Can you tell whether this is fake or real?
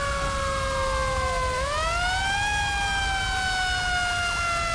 real